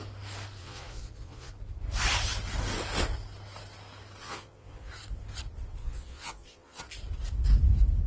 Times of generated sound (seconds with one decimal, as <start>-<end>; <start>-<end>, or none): 0.6-1.5; 4.2-4.9; 5.8-6.8